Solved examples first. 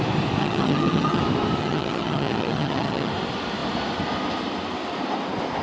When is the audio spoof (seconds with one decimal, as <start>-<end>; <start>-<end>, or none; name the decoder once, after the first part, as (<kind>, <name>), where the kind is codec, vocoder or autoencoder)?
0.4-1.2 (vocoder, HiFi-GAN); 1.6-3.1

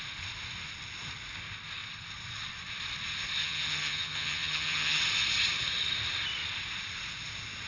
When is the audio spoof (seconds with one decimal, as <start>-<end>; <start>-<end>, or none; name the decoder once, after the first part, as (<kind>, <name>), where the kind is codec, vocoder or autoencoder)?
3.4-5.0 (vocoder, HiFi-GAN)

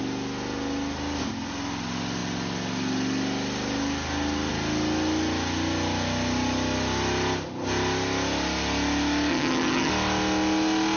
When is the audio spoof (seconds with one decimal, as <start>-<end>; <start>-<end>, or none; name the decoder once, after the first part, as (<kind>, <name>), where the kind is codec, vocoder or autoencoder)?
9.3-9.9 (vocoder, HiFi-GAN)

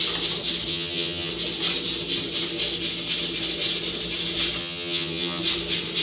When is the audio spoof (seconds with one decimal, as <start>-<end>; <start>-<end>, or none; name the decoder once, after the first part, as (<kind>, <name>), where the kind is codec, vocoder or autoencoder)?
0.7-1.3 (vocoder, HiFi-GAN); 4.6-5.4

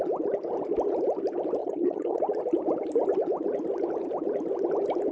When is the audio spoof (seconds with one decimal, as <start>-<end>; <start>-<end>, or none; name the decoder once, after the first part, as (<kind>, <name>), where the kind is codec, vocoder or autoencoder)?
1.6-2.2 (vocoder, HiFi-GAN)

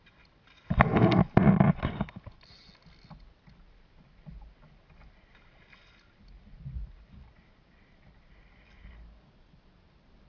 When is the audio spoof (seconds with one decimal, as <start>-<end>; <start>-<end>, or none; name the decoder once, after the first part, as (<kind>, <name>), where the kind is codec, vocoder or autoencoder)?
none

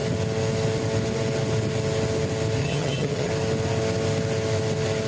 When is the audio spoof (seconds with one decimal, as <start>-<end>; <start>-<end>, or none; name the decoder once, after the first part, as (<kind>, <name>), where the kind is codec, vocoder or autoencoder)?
2.6-3.3 (vocoder, HiFi-GAN)